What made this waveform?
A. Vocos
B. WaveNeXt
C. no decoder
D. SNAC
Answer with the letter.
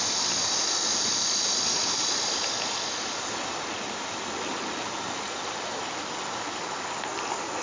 C